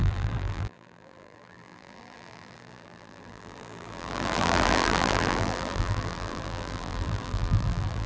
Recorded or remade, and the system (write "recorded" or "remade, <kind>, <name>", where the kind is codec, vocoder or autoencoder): remade, vocoder, BigVGAN v2